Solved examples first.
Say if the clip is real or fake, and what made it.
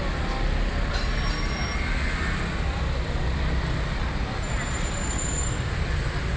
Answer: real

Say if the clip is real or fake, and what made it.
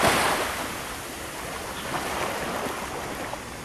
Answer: real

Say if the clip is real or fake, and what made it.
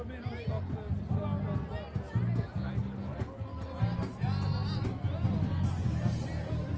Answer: real